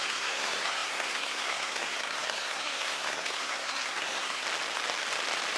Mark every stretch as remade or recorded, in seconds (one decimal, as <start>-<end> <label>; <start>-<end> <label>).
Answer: 0.0-4.4 remade; 4.4-5.6 recorded

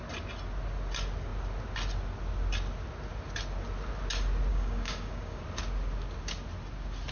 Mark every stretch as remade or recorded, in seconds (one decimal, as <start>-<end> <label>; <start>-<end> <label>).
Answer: 0.0-4.5 recorded; 4.5-5.4 remade; 5.4-7.1 recorded

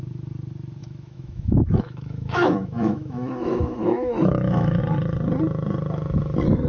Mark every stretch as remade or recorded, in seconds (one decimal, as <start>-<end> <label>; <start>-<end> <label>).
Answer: 0.0-0.8 recorded; 0.8-4.8 remade; 4.8-6.7 recorded

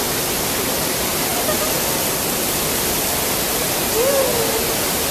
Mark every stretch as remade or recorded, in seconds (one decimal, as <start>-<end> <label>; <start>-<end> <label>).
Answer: 0.0-5.1 recorded